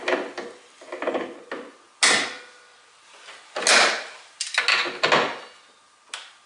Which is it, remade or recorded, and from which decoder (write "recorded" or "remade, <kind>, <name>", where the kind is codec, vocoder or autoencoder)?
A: recorded